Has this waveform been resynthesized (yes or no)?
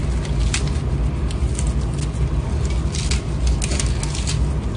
no